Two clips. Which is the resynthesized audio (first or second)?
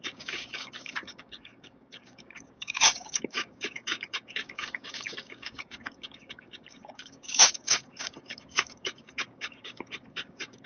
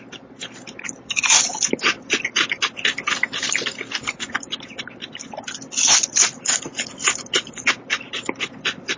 first